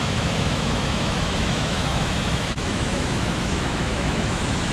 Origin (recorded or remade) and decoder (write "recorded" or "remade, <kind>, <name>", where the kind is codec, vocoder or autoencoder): remade, autoencoder, DAC-VAE